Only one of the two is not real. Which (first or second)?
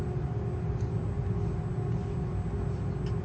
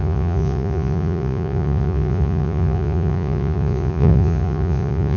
second